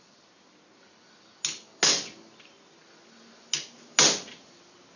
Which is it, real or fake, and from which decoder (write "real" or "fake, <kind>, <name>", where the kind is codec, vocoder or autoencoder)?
real